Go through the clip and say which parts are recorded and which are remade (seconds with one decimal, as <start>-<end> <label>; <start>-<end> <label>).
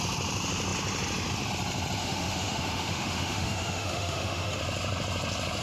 0.0-2.0 recorded; 2.0-4.6 remade; 4.6-5.6 recorded